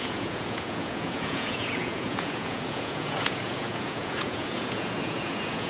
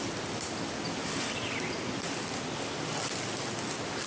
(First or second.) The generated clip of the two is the first